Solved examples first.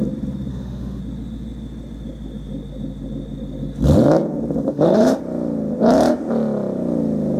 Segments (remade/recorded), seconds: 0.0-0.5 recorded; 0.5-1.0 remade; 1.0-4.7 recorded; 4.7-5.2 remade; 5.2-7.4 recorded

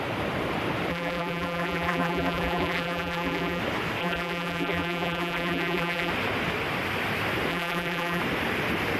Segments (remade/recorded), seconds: 0.0-0.9 recorded; 0.9-3.6 remade; 3.6-4.0 recorded; 4.0-6.1 remade; 6.1-7.5 recorded; 7.5-8.2 remade; 8.2-9.0 recorded

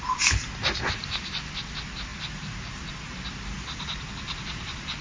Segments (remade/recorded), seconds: 0.0-5.0 recorded

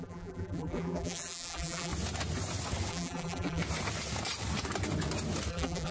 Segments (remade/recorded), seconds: 0.0-1.9 remade; 1.9-2.9 recorded; 2.9-3.6 remade; 3.6-5.5 recorded; 5.5-5.9 remade

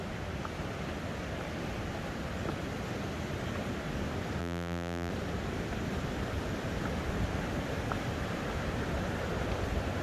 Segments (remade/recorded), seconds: 0.0-4.4 recorded; 4.4-5.1 remade; 5.1-10.0 recorded